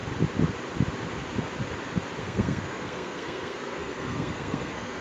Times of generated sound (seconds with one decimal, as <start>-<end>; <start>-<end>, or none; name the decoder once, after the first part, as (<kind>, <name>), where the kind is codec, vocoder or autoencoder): 2.2-5.0 (codec, SNAC)